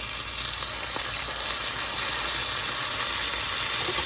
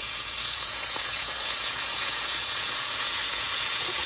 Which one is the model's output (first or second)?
second